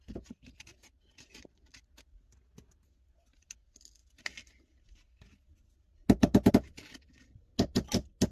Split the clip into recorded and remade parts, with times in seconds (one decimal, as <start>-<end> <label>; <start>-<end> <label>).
0.0-8.3 recorded